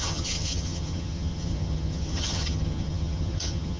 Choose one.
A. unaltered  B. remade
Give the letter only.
B